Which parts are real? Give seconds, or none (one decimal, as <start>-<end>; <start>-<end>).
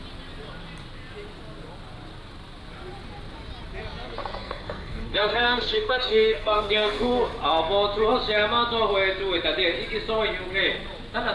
0.0-4.2; 7.1-11.3